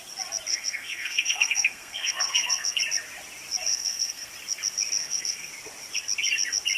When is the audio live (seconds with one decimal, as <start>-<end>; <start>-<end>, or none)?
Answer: 0.0-0.5; 2.8-3.7; 4.3-5.0; 5.5-6.8